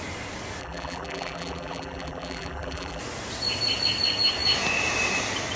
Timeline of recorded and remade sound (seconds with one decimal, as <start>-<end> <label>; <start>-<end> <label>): 0.0-0.6 recorded; 0.6-3.0 remade; 3.0-5.6 recorded